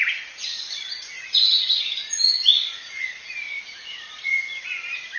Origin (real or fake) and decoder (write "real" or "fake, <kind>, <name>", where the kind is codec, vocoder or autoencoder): fake, vocoder, Vocos